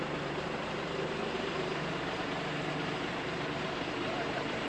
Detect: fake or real fake